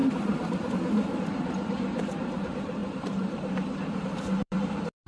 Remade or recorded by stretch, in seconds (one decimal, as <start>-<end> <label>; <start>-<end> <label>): 0.0-5.1 remade